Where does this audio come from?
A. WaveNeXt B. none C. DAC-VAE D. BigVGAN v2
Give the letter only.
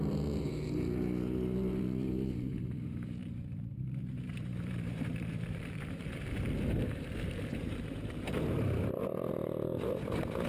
D